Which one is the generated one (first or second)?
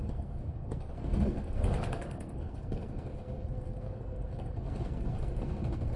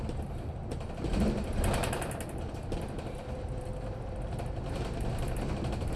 first